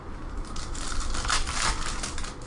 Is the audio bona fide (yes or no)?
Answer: yes